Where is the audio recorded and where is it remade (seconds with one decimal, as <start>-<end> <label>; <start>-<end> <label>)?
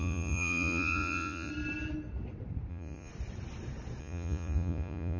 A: 0.0-1.5 remade; 1.5-2.7 recorded; 2.7-3.1 remade; 3.1-4.0 recorded; 4.0-5.2 remade